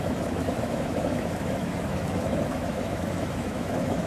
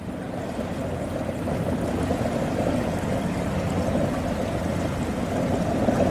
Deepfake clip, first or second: first